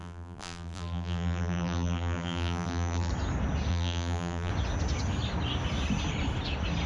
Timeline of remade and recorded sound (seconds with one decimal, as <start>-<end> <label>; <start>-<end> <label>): 0.0-3.1 remade; 3.1-3.7 recorded; 3.7-4.5 remade; 4.5-6.9 recorded